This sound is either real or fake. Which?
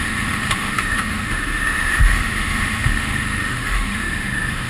fake